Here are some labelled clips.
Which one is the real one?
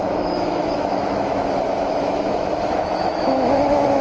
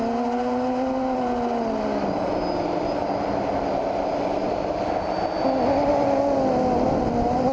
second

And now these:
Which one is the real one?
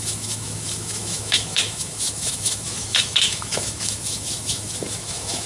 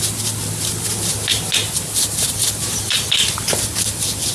second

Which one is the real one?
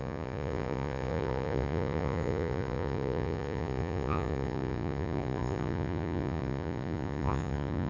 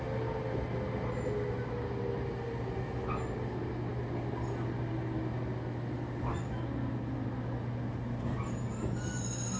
second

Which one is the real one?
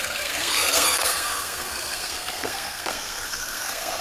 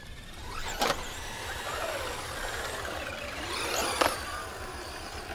second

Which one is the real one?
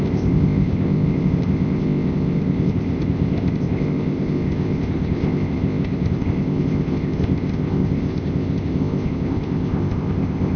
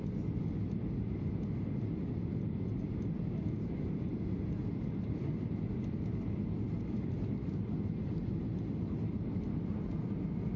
second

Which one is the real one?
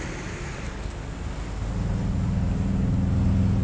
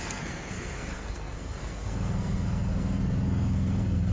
first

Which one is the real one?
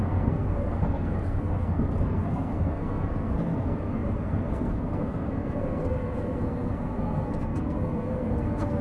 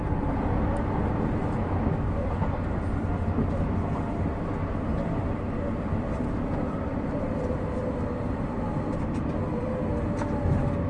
second